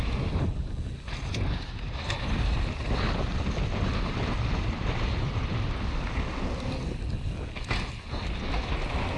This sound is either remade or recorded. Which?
recorded